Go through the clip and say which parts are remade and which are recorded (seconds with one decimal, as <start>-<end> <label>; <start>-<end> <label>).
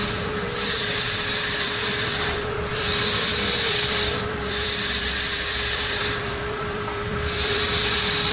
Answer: 0.0-8.3 remade